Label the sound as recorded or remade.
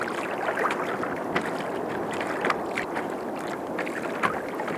recorded